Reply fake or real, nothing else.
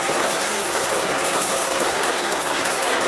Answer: fake